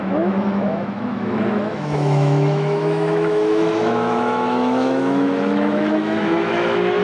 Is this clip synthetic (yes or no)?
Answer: yes